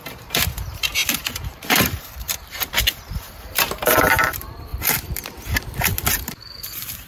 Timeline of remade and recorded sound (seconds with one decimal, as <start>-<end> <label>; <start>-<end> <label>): 0.0-4.7 remade; 4.7-6.1 recorded; 6.1-7.1 remade